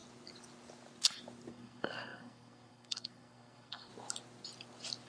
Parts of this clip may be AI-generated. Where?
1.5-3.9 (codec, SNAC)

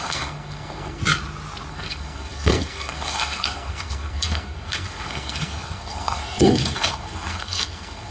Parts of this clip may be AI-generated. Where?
0.0-1.0 (codec, SNAC); 1.7-8.1

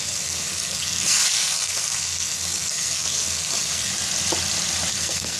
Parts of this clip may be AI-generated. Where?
0.0-3.9 (codec, SNAC); 4.9-5.4

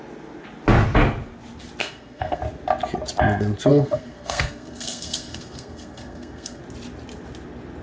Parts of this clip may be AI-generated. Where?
1.8-2.4 (codec, SNAC); 3.7-6.6

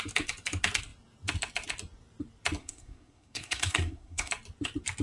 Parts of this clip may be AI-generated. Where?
2.6-4.3 (codec, SNAC)

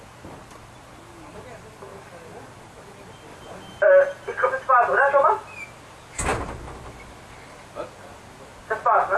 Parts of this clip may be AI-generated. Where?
none